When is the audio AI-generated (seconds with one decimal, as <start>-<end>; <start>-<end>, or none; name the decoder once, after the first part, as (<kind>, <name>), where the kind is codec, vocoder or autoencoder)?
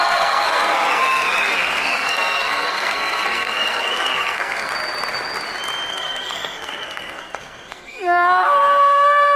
0.0-4.7 (codec, SNAC); 5.9-9.4